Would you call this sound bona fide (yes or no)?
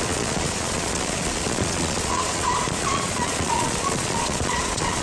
no